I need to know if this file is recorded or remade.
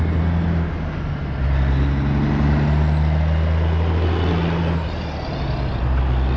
recorded